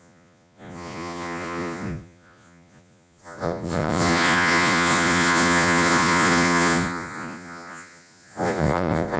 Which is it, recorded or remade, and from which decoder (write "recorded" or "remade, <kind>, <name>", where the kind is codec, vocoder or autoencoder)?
remade, vocoder, Vocos